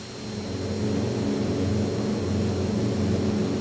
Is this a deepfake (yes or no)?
no